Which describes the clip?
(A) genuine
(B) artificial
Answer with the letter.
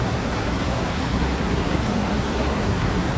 B